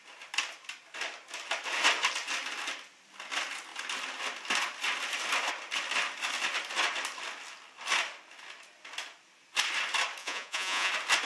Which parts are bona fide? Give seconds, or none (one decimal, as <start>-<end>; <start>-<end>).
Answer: 0.0-10.2; 10.9-11.3